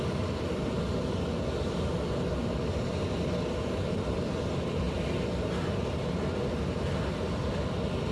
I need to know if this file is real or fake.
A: real